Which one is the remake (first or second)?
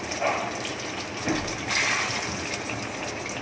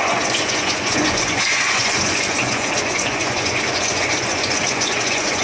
second